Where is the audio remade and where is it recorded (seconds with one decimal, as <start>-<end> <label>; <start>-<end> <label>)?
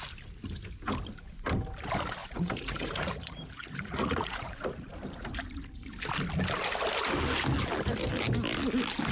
0.0-2.2 recorded; 2.2-5.0 remade; 5.0-9.1 recorded